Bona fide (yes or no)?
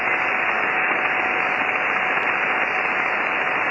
yes